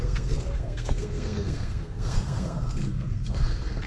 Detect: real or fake fake